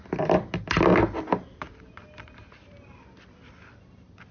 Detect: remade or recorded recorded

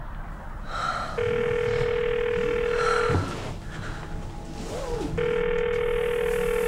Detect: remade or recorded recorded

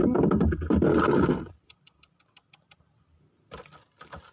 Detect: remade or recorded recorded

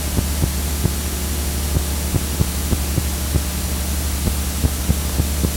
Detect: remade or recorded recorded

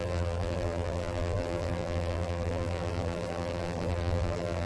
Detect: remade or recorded remade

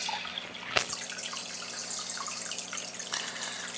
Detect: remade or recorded recorded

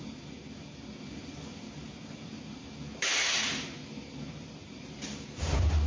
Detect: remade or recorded remade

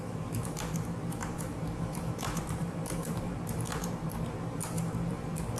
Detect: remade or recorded remade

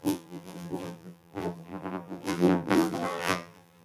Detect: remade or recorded remade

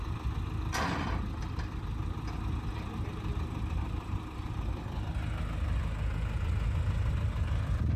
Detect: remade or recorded recorded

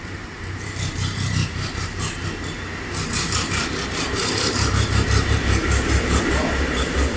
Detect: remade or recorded remade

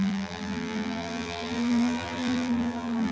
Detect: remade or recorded remade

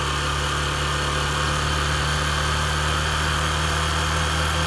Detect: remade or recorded recorded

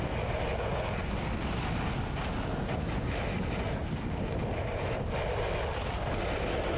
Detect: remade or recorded recorded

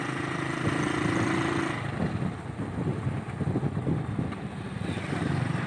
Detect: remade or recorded recorded